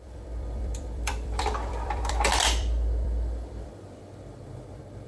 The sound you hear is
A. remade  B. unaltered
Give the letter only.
A